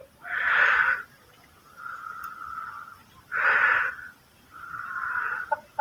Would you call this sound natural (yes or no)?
yes